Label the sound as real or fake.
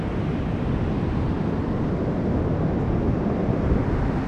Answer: real